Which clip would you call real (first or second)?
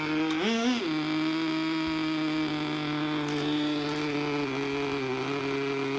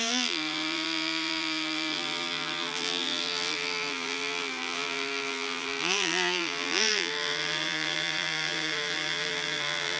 first